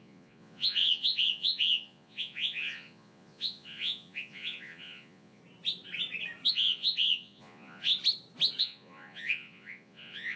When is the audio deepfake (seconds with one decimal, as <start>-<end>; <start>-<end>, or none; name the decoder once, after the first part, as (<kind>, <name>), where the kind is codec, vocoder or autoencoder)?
0.0-5.4 (vocoder, Vocos); 6.5-7.9; 8.6-10.4